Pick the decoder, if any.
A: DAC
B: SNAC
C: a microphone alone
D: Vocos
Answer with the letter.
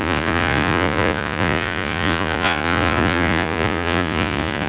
D